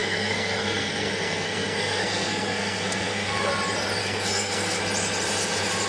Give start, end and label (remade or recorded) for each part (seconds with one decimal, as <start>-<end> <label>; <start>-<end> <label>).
0.0-3.5 remade; 3.5-4.0 recorded; 4.0-4.8 remade; 4.8-5.9 recorded

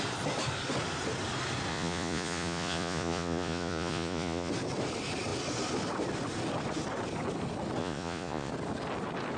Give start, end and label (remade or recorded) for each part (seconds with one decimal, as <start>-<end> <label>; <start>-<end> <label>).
0.0-1.7 recorded; 1.7-4.5 remade; 4.5-7.8 recorded; 7.8-8.5 remade; 8.5-9.4 recorded

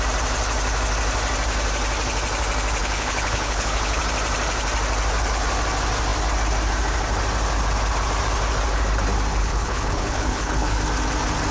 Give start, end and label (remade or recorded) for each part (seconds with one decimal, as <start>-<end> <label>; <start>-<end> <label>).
0.0-2.8 recorded; 2.8-4.0 remade; 4.0-9.4 recorded; 9.4-10.8 remade; 10.8-11.5 recorded

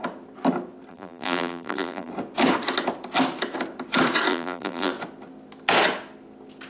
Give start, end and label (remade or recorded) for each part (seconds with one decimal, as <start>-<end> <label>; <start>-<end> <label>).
0.0-0.9 recorded; 0.9-2.1 remade; 2.1-4.3 recorded; 4.3-4.9 remade; 4.9-6.7 recorded

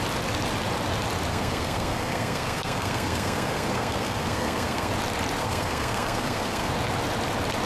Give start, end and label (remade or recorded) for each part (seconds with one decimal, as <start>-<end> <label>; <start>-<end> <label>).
0.0-1.3 recorded; 1.3-4.9 remade; 4.9-5.4 recorded; 5.4-6.7 remade; 6.7-7.7 recorded

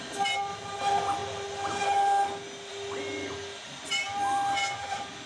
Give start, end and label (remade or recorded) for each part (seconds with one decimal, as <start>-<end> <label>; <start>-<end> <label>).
0.0-5.3 recorded

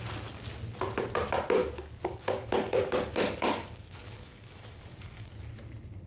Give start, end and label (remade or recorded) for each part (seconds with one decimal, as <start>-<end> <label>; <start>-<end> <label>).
0.0-1.6 recorded; 1.6-5.3 remade; 5.3-6.1 recorded

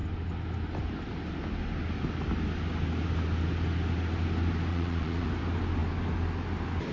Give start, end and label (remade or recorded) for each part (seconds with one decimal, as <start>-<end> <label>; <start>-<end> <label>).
0.0-4.7 recorded; 4.7-5.3 remade; 5.3-6.9 recorded